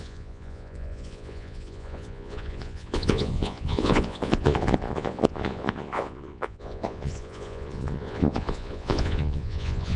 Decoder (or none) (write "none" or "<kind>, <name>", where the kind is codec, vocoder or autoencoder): vocoder, Vocos